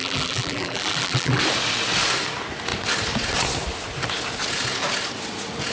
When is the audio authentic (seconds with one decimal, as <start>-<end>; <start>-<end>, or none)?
1.4-5.7